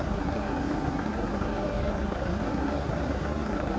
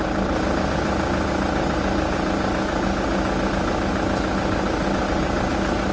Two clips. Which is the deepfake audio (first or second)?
first